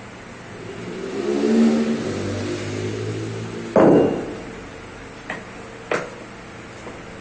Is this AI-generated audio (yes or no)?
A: no